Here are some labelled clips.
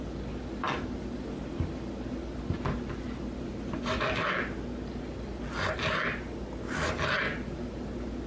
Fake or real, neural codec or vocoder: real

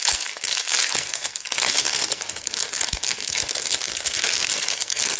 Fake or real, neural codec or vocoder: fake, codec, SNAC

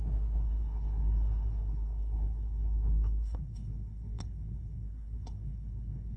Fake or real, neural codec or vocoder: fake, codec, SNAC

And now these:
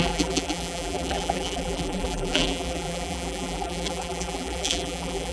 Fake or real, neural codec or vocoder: fake, vocoder, BigVGAN v2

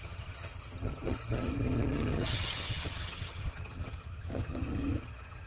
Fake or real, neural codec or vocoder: fake, vocoder, HiFi-GAN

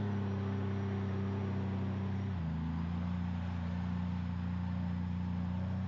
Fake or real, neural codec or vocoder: real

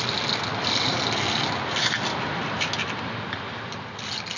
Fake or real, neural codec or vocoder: real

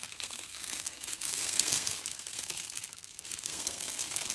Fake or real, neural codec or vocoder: fake, codec, SNAC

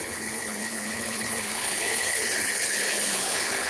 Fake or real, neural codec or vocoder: fake, codec, HILCodec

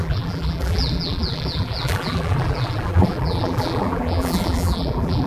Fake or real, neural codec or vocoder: fake, vocoder, BigVGAN v2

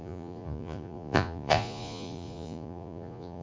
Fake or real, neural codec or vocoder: fake, vocoder, Vocos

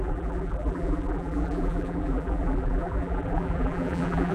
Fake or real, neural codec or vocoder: fake, vocoder, BigVGAN v2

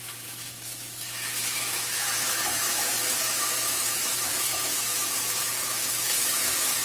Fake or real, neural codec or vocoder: fake, autoencoder, DAC-VAE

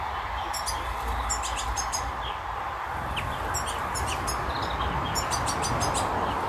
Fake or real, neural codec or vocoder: real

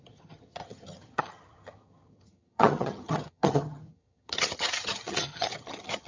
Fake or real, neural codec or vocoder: fake, vocoder, HiFi-GAN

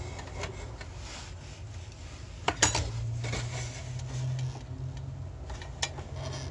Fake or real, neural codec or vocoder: real